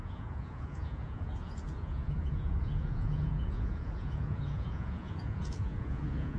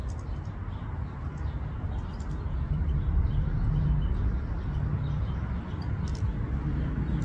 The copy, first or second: first